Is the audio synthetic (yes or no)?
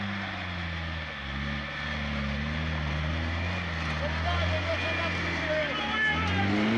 no